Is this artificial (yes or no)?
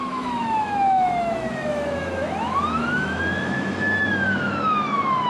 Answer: yes